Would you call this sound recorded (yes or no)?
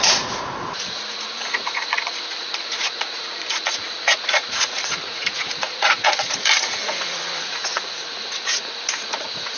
no